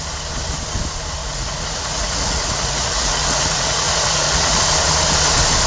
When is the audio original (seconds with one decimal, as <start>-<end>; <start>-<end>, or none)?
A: 0.0-1.2; 4.6-5.7